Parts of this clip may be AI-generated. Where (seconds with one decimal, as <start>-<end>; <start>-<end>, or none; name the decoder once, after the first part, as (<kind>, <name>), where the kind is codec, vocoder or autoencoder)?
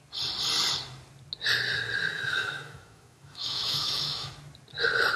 2.1-4.3 (autoencoder, DAC-VAE)